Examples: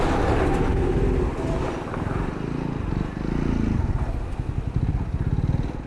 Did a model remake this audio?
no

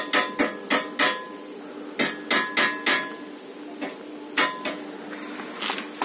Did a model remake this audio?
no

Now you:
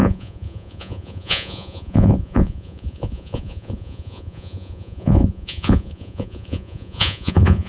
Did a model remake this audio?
yes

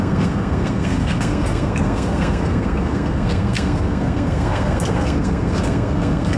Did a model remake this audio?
yes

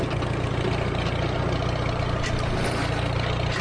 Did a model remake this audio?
no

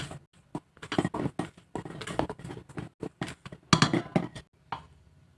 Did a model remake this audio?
no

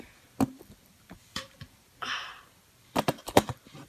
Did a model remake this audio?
yes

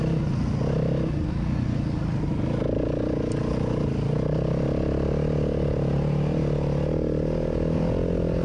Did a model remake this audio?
no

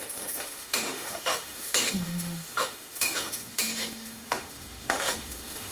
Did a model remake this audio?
yes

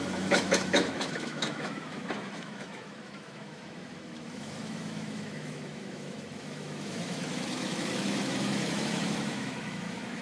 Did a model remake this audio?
yes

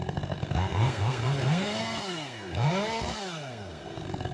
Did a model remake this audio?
yes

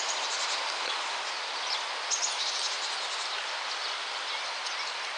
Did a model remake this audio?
no